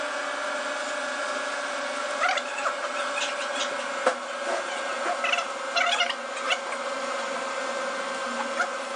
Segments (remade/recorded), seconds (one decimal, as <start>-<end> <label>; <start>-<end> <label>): 0.0-9.0 recorded